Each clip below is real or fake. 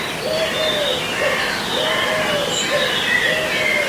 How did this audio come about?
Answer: real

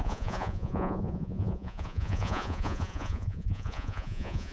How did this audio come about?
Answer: fake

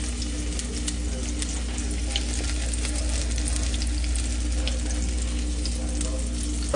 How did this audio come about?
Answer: real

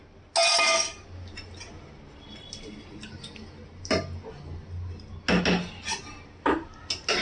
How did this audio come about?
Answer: real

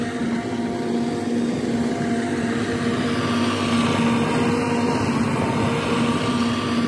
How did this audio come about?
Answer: real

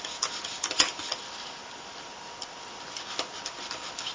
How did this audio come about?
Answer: real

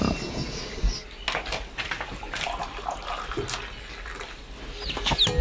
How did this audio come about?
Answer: real